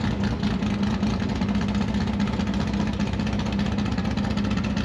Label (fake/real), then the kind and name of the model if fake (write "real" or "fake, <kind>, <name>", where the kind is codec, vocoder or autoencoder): real